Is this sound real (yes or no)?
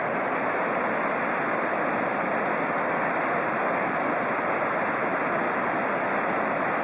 yes